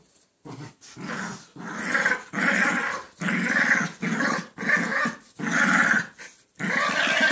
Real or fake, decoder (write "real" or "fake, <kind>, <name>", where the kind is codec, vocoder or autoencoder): real